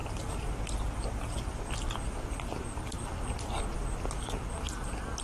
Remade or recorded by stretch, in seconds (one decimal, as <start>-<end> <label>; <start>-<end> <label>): 0.0-5.2 recorded